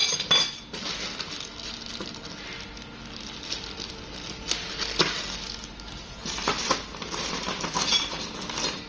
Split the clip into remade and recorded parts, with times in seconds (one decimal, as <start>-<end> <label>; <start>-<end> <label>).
0.0-8.9 recorded